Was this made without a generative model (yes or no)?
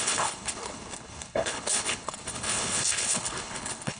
no